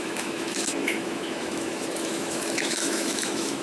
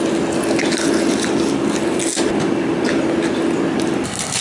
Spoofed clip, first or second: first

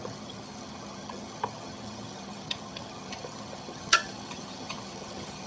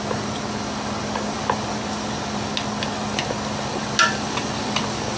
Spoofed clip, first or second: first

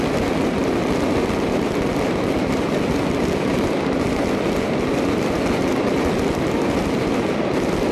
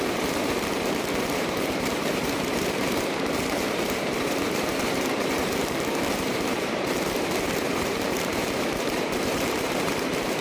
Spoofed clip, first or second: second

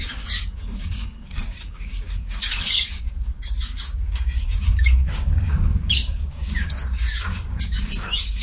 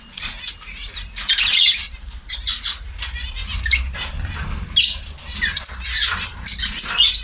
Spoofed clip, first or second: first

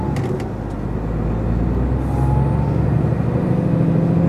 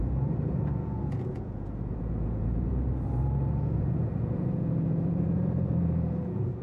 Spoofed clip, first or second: second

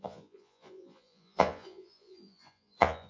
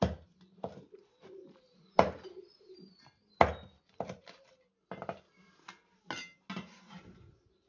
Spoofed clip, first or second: first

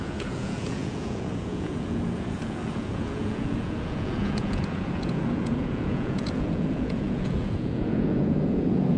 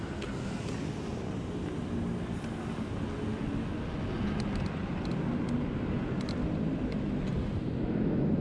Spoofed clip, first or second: first